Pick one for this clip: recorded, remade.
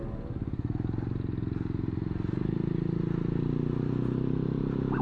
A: recorded